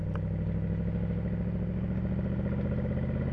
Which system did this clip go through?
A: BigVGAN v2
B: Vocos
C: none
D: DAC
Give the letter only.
C